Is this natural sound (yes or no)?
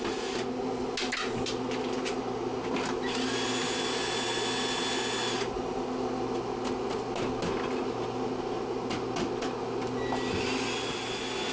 yes